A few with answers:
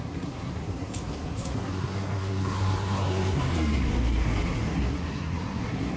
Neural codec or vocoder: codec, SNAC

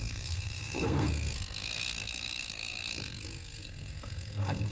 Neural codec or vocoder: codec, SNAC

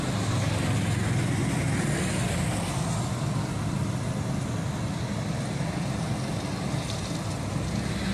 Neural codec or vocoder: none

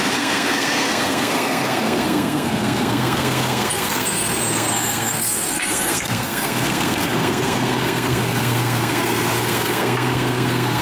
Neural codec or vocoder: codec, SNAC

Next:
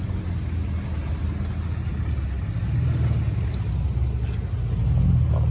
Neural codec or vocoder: none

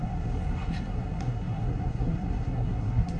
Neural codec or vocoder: codec, SNAC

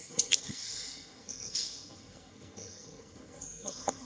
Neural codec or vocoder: codec, SNAC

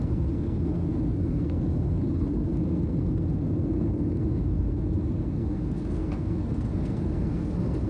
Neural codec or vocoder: codec, SNAC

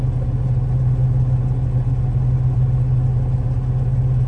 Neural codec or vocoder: none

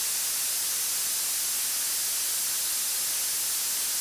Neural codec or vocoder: none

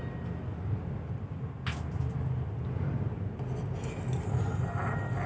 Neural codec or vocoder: none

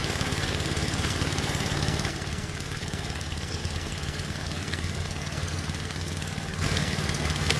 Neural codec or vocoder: codec, SNAC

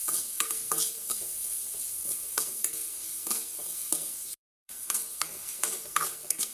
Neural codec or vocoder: codec, SNAC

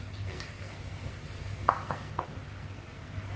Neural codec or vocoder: codec, SNAC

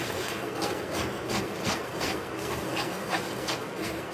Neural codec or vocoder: codec, SNAC